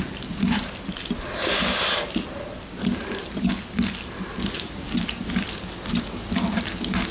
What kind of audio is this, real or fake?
real